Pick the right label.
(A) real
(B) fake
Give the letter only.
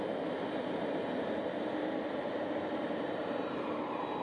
A